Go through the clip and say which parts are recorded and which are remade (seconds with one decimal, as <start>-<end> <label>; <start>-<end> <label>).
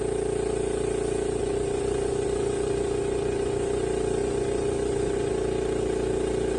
0.0-1.4 recorded; 1.4-3.8 remade; 3.8-4.2 recorded; 4.2-5.3 remade; 5.3-6.6 recorded